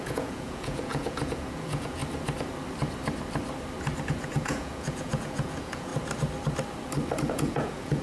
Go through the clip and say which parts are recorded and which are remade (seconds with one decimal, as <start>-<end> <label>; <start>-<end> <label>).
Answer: 0.0-2.0 remade; 2.0-4.1 recorded; 4.1-5.9 remade; 5.9-7.3 recorded; 7.3-8.0 remade